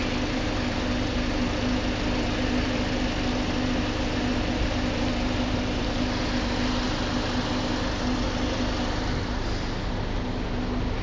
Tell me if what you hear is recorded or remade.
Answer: recorded